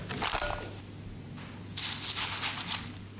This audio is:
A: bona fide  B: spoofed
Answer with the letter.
A